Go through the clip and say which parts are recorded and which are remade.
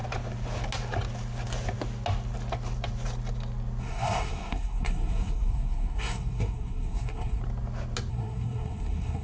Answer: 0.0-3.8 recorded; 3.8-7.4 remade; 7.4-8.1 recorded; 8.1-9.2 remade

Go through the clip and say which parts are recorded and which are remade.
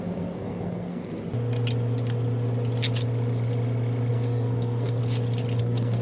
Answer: 0.0-1.1 remade; 1.1-4.1 recorded; 4.1-5.0 remade; 5.0-5.6 recorded; 5.6-6.0 remade